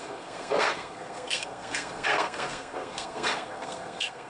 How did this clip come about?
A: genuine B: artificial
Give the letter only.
B